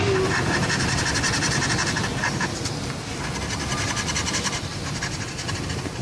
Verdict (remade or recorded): recorded